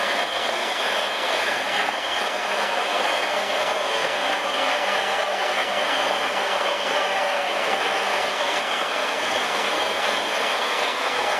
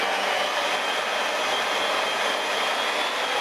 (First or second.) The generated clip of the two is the first